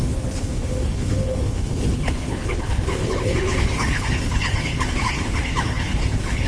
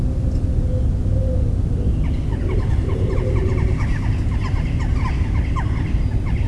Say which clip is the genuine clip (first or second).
second